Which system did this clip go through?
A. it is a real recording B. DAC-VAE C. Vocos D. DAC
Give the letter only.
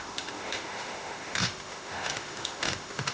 B